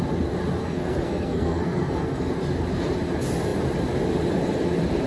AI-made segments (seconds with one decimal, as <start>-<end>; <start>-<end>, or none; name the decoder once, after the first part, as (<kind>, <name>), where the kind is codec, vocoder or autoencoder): 0.6-2.3 (codec, SNAC)